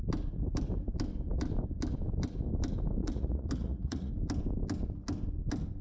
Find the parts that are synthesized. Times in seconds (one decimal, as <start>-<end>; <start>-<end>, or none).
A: 3.0-4.1